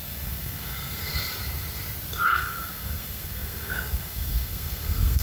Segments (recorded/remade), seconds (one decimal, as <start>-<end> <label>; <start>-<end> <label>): 0.0-1.1 remade; 1.1-2.3 recorded; 2.3-5.2 remade